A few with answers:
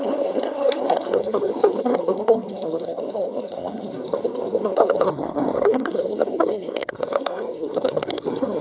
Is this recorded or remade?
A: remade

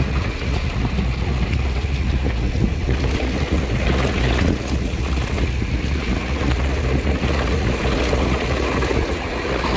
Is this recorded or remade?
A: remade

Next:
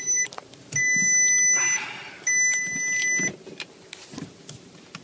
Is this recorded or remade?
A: recorded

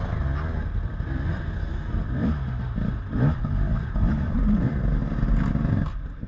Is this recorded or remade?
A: recorded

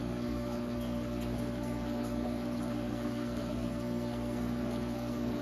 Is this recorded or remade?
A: remade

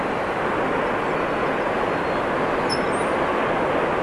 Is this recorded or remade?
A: recorded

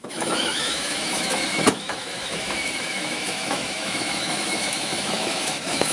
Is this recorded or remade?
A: remade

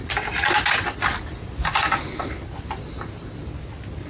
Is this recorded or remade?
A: remade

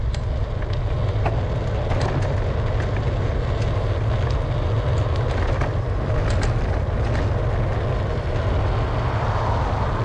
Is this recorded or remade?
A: recorded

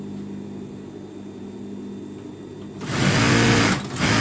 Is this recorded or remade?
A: recorded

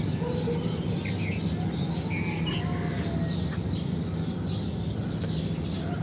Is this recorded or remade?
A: recorded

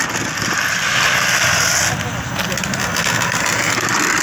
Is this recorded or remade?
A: recorded